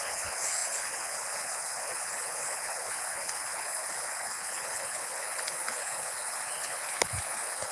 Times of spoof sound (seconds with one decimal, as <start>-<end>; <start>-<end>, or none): 0.0-7.7